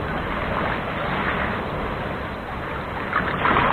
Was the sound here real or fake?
real